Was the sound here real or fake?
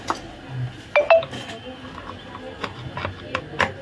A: real